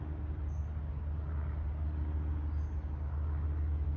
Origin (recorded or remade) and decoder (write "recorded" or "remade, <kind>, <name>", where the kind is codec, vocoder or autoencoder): recorded